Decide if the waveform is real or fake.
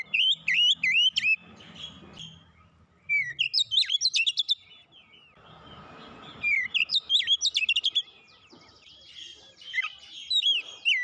real